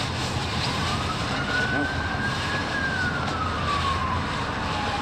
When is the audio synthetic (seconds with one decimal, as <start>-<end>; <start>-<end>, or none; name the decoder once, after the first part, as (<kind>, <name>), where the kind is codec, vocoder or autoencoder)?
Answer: 0.4-3.4 (vocoder, BigVGAN v2); 4.0-4.6